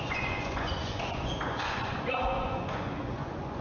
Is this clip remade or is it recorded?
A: remade